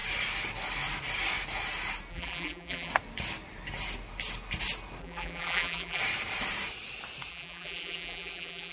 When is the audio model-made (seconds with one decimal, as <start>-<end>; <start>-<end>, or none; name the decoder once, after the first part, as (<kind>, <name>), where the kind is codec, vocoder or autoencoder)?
2.1-2.9 (vocoder, BigVGAN v2); 5.0-6.0; 7.3-8.7